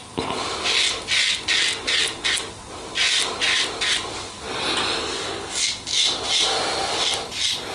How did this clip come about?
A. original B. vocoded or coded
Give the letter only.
A